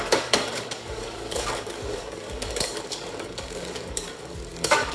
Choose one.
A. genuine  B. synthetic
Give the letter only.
B